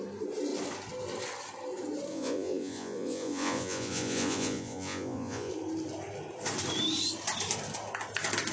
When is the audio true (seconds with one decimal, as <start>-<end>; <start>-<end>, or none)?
0.0-2.1; 5.5-8.5